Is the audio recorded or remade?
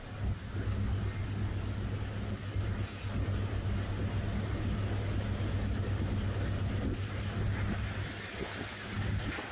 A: recorded